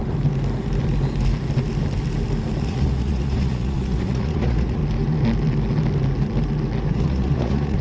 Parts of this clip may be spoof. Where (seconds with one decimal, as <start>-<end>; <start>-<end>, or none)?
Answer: 2.7-4.8; 6.9-7.8